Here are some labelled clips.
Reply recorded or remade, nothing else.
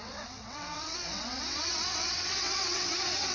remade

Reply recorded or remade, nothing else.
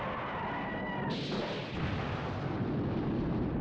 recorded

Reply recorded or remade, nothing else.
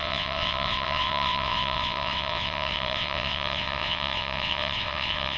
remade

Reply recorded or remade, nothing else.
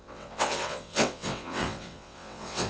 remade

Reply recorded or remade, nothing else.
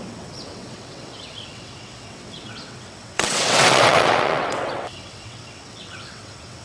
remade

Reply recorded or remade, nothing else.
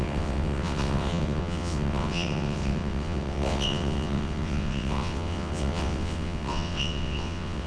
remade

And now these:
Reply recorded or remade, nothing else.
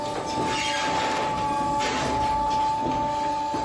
recorded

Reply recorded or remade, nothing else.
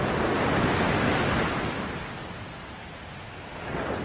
recorded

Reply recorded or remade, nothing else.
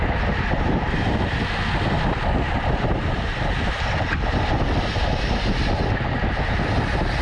recorded